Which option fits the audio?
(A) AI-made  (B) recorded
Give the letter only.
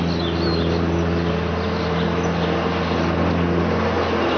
B